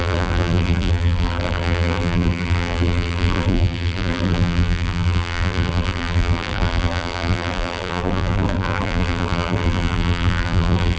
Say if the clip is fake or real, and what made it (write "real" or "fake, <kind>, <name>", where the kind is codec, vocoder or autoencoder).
fake, vocoder, BigVGAN v2